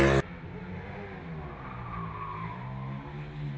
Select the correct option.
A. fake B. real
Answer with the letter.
B